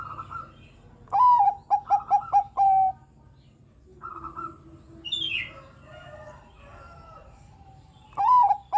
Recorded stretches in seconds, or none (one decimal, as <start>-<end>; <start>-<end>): 0.0-6.7; 8.3-8.8